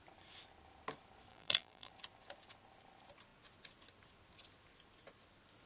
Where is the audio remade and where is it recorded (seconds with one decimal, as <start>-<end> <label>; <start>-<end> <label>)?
0.0-1.3 recorded; 1.3-1.9 remade; 1.9-5.7 recorded